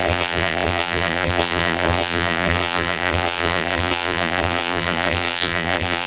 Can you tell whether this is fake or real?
fake